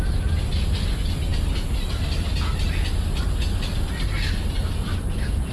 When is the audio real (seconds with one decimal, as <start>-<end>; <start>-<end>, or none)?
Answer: 0.0-5.5